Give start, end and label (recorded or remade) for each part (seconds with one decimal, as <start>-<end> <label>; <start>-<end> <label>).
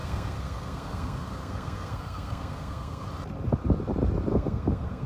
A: 0.0-3.1 remade; 3.1-4.3 recorded; 4.3-5.1 remade